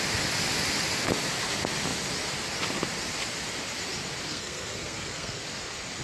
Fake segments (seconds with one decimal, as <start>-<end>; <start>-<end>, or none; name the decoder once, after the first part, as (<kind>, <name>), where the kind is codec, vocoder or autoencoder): 4.3-5.4 (codec, SNAC)